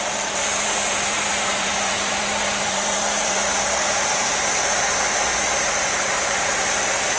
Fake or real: fake